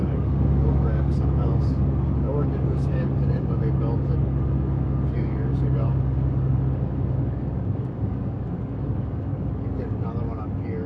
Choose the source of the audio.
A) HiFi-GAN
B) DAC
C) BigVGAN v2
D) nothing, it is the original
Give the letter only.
B